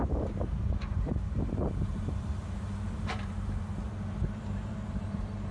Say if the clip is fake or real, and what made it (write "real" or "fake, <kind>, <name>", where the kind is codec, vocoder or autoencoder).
fake, vocoder, BigVGAN v2